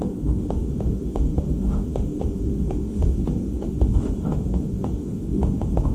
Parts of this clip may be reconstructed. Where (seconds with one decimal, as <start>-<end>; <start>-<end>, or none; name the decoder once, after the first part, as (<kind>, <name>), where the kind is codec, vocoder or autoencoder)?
0.0-5.9 (autoencoder, DAC-VAE)